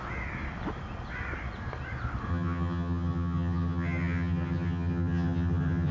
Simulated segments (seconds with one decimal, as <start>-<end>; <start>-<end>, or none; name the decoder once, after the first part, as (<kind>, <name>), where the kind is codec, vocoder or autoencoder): 2.3-5.9 (vocoder, HiFi-GAN)